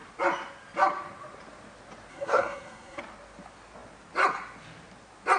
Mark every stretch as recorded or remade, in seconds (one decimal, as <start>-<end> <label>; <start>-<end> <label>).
0.0-2.1 recorded; 2.1-3.0 remade; 3.0-5.4 recorded

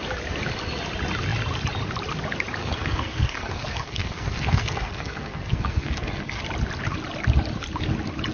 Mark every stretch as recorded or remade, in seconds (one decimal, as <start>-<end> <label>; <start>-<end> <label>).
0.0-2.6 recorded; 2.6-6.4 remade; 6.4-8.3 recorded

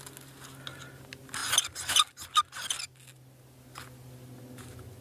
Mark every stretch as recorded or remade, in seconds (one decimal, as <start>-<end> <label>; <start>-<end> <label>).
0.0-5.0 recorded

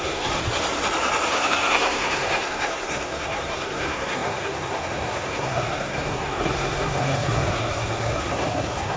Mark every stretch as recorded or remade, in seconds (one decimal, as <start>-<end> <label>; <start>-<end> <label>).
0.0-0.4 remade; 0.4-1.3 recorded; 1.3-9.0 remade

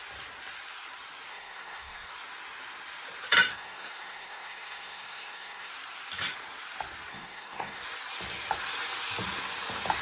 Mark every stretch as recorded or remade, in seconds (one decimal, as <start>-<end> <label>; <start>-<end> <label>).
0.0-1.3 recorded; 1.3-2.1 remade; 2.1-3.5 recorded; 3.5-5.7 remade; 5.7-7.1 recorded; 7.1-7.8 remade; 7.8-10.0 recorded

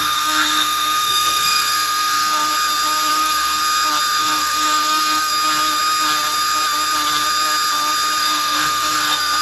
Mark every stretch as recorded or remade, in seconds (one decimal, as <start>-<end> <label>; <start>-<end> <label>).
0.0-2.5 remade; 2.5-3.1 recorded; 3.1-3.6 remade; 3.6-4.2 recorded; 4.2-5.3 remade; 5.3-8.2 recorded; 8.2-9.4 remade

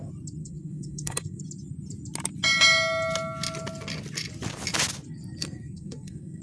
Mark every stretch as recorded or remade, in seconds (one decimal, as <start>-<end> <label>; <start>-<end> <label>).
0.0-0.4 recorded; 0.4-1.4 remade; 1.4-5.4 recorded; 5.4-6.4 remade

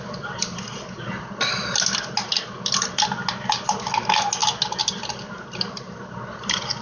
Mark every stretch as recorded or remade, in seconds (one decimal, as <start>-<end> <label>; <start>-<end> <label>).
0.0-6.8 recorded